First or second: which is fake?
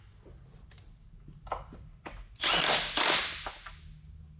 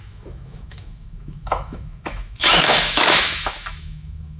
second